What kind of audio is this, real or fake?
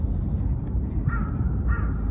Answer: fake